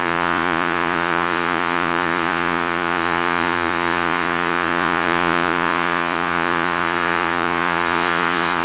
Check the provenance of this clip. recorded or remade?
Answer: remade